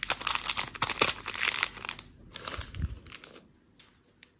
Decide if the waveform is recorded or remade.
recorded